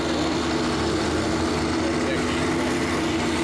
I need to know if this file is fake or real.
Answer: real